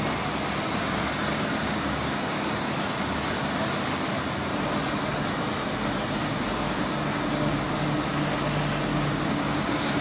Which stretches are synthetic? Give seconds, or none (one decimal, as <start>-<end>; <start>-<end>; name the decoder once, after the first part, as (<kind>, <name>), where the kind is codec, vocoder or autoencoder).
1.5-2.4 (codec, DAC); 6.2-6.8; 8.9-10.0